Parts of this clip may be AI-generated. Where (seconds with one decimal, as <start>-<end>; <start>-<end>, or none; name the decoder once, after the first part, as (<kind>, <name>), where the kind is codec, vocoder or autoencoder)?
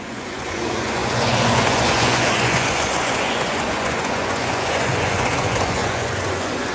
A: 0.0-6.7 (vocoder, Vocos)